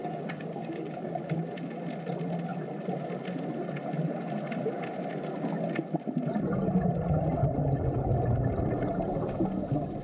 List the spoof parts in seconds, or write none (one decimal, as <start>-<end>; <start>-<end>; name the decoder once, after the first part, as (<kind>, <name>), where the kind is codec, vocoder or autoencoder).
0.0-1.5 (codec, DAC)